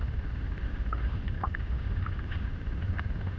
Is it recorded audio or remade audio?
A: remade